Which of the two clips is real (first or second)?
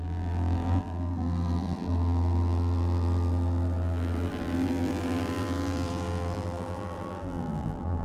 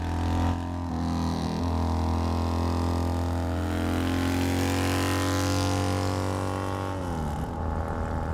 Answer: second